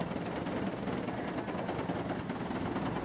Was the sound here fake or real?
real